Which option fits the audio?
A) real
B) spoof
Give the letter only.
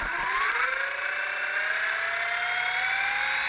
A